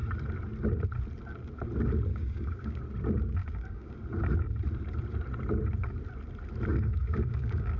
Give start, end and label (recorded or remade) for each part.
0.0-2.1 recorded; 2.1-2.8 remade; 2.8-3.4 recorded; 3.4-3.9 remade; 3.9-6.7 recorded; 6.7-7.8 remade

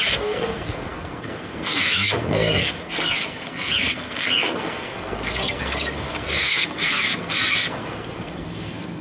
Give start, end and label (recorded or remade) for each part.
0.0-9.0 remade

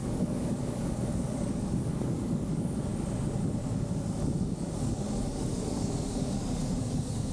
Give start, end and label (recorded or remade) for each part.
0.0-2.9 remade; 2.9-4.4 recorded; 4.4-7.3 remade

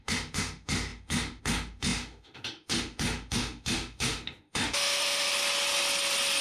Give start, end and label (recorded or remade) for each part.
0.0-5.3 remade; 5.3-6.4 recorded